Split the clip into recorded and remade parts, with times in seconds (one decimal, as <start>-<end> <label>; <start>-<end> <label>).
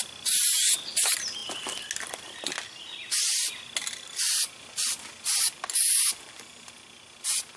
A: 0.0-7.6 recorded